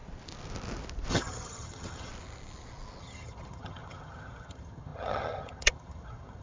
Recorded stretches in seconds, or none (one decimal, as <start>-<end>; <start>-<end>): 0.0-1.1; 2.1-3.0